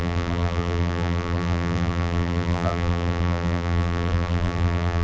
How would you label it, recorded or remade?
remade